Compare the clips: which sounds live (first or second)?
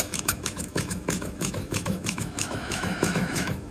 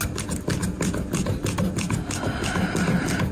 second